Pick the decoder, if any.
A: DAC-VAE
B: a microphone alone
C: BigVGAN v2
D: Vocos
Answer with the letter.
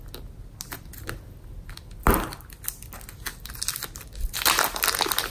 B